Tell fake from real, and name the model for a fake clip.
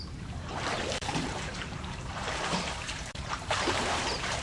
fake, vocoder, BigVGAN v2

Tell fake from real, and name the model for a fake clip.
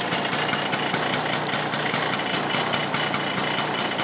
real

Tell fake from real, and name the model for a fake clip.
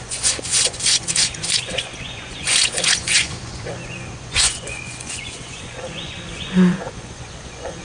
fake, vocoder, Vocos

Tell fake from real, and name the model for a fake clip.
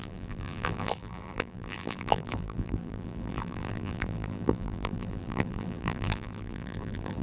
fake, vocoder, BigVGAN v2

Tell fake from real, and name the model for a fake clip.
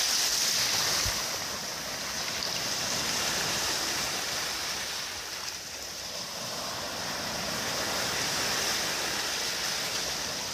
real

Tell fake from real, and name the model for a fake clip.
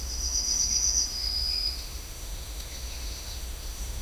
fake, autoencoder, DAC-VAE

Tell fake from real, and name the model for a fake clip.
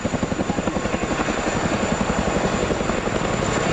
real